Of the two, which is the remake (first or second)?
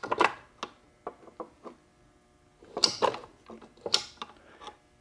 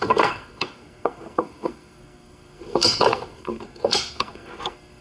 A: second